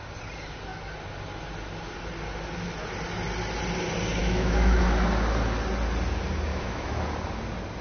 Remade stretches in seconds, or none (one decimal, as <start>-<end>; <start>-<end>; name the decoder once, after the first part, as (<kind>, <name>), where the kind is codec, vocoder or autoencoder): 4.2-4.8 (autoencoder, DAC-VAE); 6.5-7.0